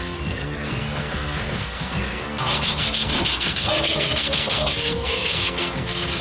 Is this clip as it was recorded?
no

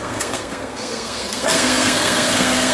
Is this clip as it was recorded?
no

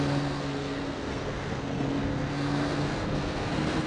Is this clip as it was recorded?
no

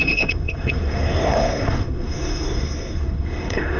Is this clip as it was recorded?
no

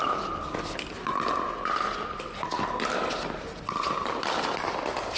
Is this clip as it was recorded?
yes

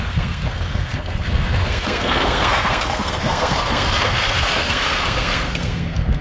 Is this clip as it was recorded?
no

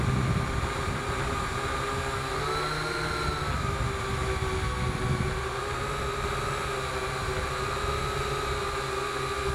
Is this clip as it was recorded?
yes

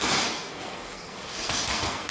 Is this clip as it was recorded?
no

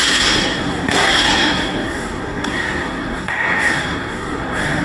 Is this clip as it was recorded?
no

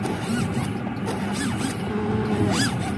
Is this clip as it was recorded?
yes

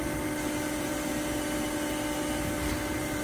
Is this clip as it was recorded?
yes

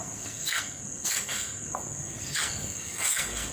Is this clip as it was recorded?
no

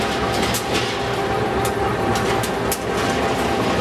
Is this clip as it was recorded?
yes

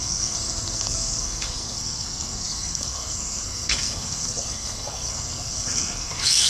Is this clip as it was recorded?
no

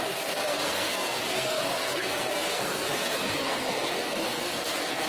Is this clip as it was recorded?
no